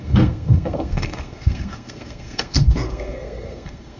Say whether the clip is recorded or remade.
remade